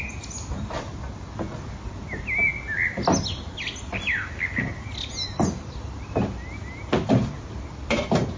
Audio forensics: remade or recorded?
recorded